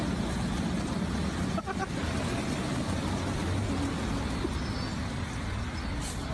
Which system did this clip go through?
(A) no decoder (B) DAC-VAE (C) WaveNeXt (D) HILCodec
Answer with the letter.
A